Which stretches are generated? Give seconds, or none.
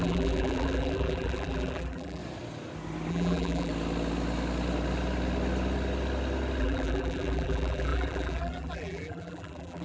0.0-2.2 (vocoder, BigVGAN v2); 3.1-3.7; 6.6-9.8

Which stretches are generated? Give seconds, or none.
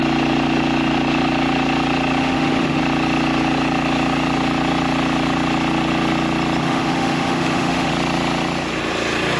2.2-2.8 (autoencoder, DAC-VAE); 6.6-7.9